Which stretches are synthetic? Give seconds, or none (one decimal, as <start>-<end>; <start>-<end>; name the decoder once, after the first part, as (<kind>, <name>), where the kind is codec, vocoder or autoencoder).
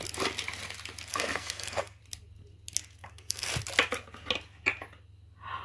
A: 1.1-2.0 (codec, SNAC); 3.0-3.5